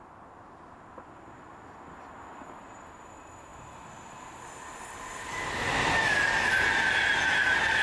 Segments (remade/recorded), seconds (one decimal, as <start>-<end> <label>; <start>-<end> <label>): 0.0-7.8 recorded